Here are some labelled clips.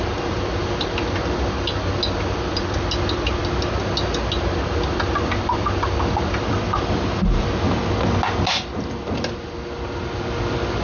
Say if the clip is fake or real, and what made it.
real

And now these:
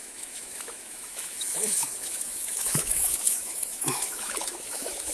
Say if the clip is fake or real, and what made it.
fake, autoencoder, DAC-VAE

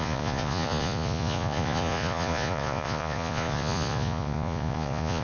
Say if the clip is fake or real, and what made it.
fake, vocoder, Vocos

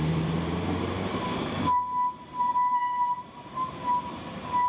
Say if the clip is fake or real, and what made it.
fake, vocoder, BigVGAN v2